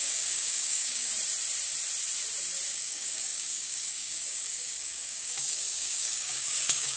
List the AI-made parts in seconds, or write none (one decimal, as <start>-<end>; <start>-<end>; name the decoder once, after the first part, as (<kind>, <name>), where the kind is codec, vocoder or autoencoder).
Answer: 0.0-1.1 (codec, DAC); 2.7-7.0